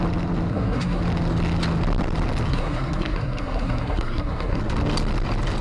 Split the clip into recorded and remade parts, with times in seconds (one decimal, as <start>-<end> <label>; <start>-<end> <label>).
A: 0.0-0.5 recorded; 0.5-1.0 remade; 1.0-2.5 recorded; 2.5-4.6 remade; 4.6-5.6 recorded